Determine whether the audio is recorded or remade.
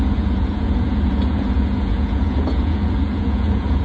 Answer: remade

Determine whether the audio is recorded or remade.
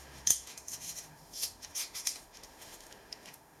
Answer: remade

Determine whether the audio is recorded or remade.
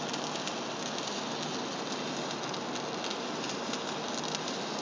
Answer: recorded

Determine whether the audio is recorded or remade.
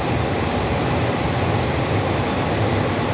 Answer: recorded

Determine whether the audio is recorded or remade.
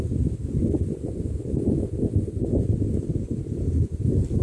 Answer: recorded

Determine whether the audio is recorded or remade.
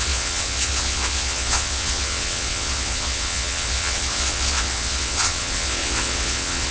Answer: remade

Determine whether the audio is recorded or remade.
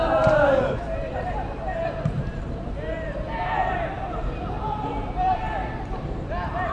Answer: remade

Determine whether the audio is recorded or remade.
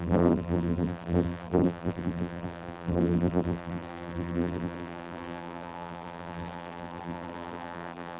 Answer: remade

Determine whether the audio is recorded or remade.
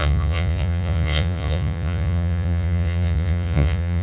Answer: remade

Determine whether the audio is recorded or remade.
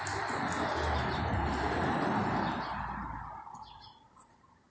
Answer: recorded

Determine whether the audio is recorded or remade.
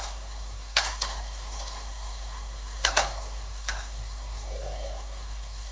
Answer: remade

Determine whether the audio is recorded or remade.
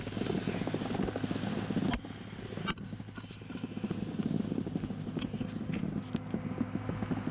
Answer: recorded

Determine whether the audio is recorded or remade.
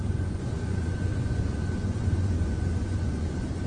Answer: remade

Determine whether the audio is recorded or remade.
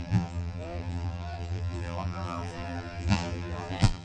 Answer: remade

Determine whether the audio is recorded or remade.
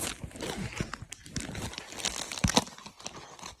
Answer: recorded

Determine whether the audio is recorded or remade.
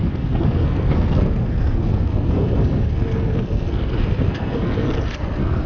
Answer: remade